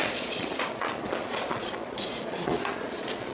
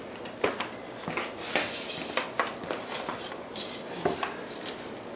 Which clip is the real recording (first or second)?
second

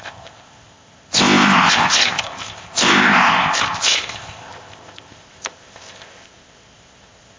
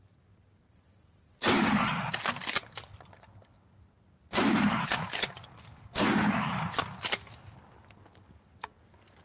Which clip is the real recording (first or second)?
second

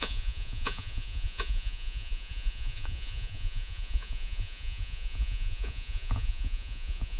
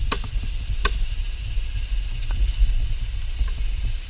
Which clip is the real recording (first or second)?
second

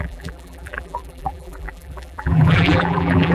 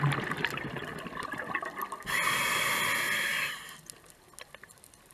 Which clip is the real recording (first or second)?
second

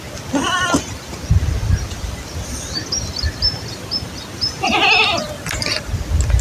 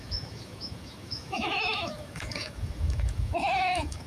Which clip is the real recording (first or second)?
first